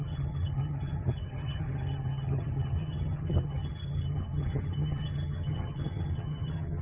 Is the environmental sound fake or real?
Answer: fake